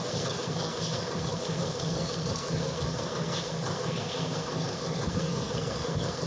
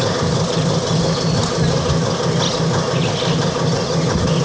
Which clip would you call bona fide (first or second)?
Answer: second